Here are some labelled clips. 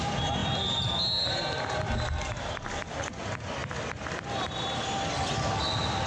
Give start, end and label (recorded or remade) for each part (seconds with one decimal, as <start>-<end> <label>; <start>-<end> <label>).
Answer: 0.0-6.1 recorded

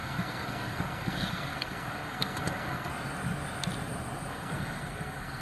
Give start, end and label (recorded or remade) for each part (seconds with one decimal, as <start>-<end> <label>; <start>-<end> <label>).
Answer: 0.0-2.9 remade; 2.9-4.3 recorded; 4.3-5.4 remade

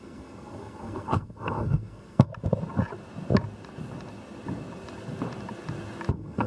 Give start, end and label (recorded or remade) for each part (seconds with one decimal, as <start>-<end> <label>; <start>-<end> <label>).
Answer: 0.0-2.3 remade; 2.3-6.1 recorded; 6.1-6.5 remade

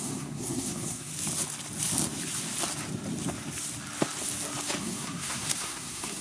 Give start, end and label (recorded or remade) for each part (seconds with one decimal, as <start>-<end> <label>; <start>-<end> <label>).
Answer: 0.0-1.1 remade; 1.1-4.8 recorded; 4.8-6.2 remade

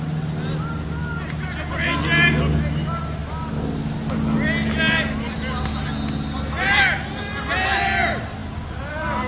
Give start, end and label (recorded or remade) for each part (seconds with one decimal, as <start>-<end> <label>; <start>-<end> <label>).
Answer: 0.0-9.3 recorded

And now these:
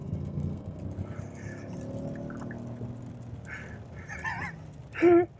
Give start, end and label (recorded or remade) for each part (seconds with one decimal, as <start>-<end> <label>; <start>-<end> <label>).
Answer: 0.0-0.8 remade; 0.8-5.4 recorded